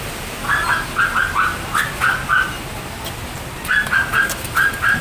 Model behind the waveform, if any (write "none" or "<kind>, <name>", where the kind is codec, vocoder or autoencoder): none